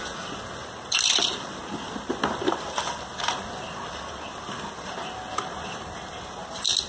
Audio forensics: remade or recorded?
recorded